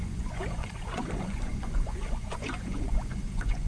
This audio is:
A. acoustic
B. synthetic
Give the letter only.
B